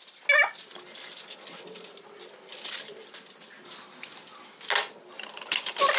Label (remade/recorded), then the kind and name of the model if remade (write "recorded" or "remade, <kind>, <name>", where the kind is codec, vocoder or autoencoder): recorded